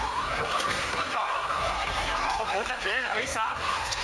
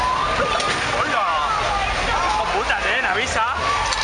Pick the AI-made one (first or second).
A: first